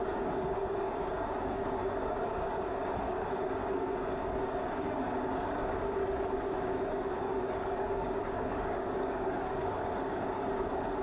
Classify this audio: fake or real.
fake